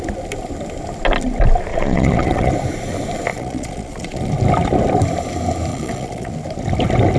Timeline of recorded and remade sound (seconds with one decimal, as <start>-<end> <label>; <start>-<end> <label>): 0.0-1.7 recorded; 1.7-2.5 remade; 2.5-3.3 recorded; 3.3-4.3 remade; 4.3-5.7 recorded; 5.7-6.3 remade; 6.3-7.2 recorded